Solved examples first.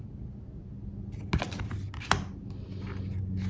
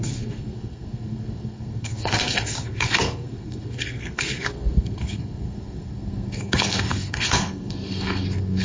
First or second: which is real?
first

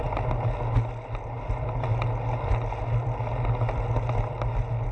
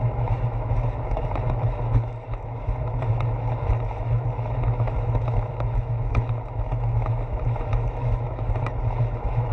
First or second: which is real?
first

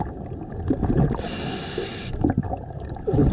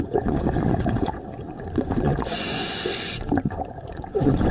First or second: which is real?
first